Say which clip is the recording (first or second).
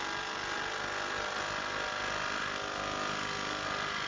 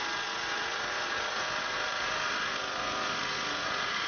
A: first